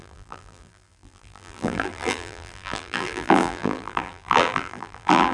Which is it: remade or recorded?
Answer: remade